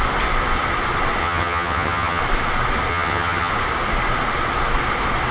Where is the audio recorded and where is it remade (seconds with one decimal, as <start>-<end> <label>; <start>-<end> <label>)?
0.0-1.2 recorded; 1.2-2.2 remade; 2.2-2.9 recorded; 2.9-3.5 remade; 3.5-5.3 recorded